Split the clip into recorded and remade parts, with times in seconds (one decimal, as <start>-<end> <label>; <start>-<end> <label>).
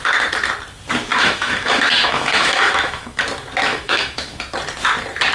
0.0-1.1 recorded; 1.1-3.2 remade; 3.2-3.7 recorded; 3.7-4.4 remade; 4.4-5.3 recorded